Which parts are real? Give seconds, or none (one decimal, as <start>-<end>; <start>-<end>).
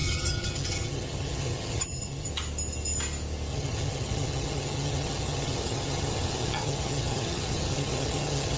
2.3-3.5